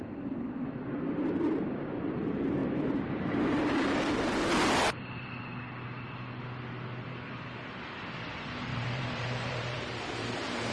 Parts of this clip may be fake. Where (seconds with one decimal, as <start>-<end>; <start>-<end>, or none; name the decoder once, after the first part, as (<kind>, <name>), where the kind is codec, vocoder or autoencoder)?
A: 2.6-4.5 (vocoder, BigVGAN v2); 8.7-10.7